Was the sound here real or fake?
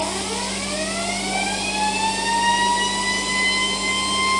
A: real